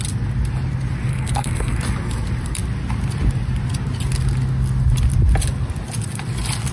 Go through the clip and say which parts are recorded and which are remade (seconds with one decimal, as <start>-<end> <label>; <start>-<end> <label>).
0.0-1.1 recorded; 1.1-1.8 remade; 1.8-6.7 recorded